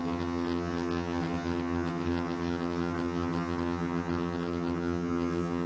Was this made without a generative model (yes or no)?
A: no